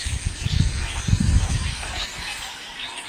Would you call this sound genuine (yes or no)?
no